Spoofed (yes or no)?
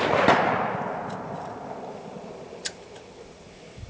no